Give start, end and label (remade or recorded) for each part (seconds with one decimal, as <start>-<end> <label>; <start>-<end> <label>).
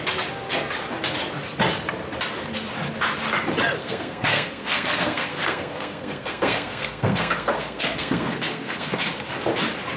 0.0-3.8 recorded; 3.8-9.1 remade; 9.1-10.0 recorded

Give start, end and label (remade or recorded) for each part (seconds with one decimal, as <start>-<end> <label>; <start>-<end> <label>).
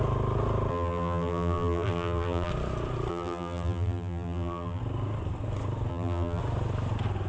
0.0-0.7 recorded; 0.7-2.5 remade; 2.5-3.1 recorded; 3.1-4.8 remade; 4.8-5.9 recorded; 5.9-6.4 remade; 6.4-7.3 recorded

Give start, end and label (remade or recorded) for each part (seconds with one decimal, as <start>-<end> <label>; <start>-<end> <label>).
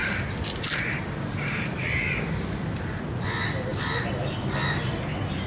0.0-2.4 remade; 2.4-3.7 recorded; 3.7-4.3 remade; 4.3-5.5 recorded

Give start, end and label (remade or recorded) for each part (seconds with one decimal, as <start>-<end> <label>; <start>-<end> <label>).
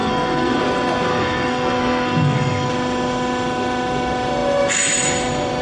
0.0-0.6 remade; 0.6-1.1 recorded; 1.1-2.7 remade; 2.7-5.6 recorded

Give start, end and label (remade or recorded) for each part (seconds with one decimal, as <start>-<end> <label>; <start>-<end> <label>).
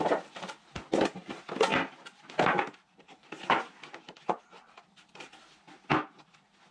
0.0-6.7 recorded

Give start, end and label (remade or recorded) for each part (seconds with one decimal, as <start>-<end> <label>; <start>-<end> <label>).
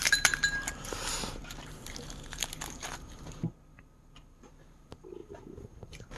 0.0-3.4 remade; 3.4-4.4 recorded; 4.4-6.2 remade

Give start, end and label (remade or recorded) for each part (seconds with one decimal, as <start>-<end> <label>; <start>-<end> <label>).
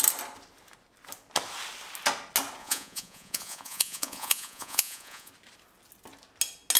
0.0-2.6 recorded; 2.6-5.3 remade; 5.3-6.8 recorded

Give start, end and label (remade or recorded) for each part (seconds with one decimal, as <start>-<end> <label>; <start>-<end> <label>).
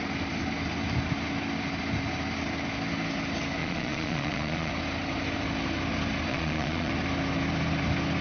0.0-3.6 recorded; 3.6-4.7 remade; 4.7-6.3 recorded; 6.3-6.9 remade; 6.9-8.2 recorded